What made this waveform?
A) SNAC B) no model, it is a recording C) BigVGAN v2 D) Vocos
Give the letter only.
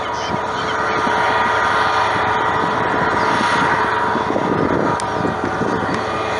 B